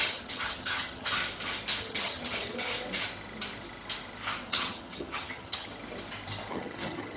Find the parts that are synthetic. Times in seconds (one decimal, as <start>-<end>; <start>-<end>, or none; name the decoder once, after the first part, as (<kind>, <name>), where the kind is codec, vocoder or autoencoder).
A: 0.0-1.2 (vocoder, HiFi-GAN); 1.8-2.7; 4.5-5.7; 6.5-7.2